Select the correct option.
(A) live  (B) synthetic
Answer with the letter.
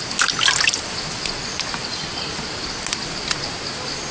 A